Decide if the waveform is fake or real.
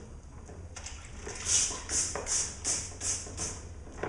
real